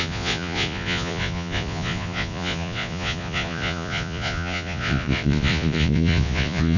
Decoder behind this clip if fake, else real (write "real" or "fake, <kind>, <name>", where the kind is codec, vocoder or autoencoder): fake, vocoder, Vocos